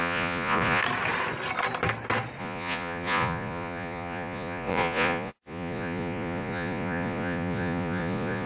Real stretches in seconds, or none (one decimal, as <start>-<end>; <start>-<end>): 0.8-2.4